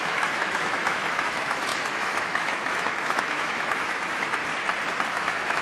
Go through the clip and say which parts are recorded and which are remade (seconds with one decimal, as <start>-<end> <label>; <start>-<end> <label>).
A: 0.0-4.4 remade; 4.4-5.1 recorded; 5.1-5.6 remade